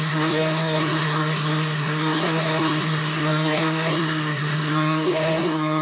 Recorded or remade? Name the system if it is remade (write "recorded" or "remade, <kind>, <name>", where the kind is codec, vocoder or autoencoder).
remade, codec, SNAC